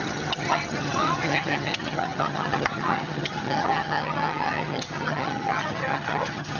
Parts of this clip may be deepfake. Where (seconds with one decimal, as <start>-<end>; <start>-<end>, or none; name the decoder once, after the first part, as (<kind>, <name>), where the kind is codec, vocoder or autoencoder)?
0.0-6.6 (vocoder, HiFi-GAN)